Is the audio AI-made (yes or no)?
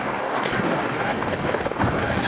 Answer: yes